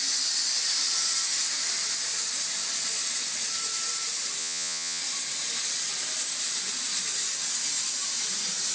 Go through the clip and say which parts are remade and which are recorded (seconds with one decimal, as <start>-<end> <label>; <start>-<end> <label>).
0.0-4.4 recorded; 4.4-5.0 remade; 5.0-8.7 recorded